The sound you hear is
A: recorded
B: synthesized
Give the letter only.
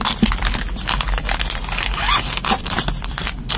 B